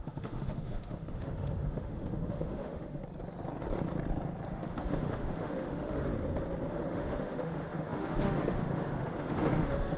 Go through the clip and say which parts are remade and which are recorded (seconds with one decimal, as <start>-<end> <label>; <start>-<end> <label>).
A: 0.0-3.0 remade; 3.0-4.5 recorded; 4.5-6.1 remade; 6.1-6.7 recorded; 6.7-10.0 remade